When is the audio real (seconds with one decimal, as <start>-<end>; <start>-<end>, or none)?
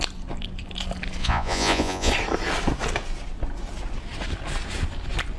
0.0-1.2; 2.1-5.4